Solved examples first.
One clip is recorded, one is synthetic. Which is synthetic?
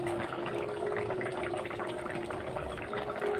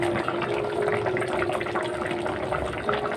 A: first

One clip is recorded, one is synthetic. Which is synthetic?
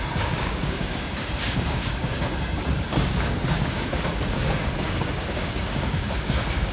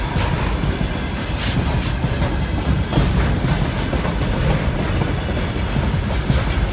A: first